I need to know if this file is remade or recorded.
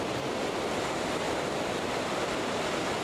recorded